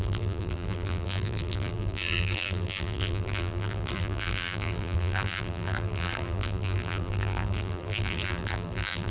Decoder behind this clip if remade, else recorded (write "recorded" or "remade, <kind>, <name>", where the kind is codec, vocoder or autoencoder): remade, vocoder, BigVGAN v2